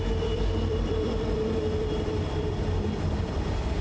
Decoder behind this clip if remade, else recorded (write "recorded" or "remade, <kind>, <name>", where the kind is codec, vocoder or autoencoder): remade, vocoder, BigVGAN v2